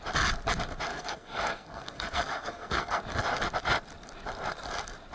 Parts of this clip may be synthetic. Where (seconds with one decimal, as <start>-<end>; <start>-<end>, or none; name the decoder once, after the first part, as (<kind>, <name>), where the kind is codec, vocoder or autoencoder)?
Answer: 0.9-3.0 (codec, SNAC)